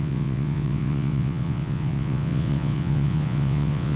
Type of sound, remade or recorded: remade